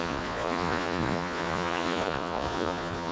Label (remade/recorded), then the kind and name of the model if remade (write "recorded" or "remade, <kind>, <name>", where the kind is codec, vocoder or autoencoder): remade, vocoder, Vocos